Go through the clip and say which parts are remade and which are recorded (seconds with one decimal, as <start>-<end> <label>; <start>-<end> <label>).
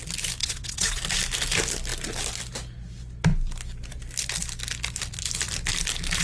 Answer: 0.0-0.4 recorded; 0.4-1.0 remade; 1.0-6.2 recorded